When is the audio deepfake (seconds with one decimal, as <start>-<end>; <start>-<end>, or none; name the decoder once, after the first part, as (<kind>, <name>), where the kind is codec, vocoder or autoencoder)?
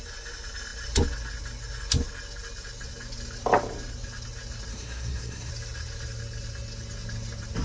4.7-5.5 (codec, SNAC)